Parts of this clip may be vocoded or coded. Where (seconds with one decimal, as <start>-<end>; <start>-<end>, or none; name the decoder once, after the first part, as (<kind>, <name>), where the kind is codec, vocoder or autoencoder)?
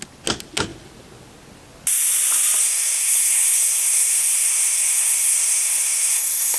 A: 2.6-6.6 (codec, SNAC)